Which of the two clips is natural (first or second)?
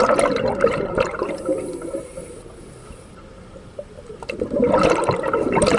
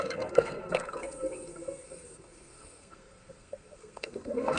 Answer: first